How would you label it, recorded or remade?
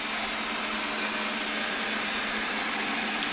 recorded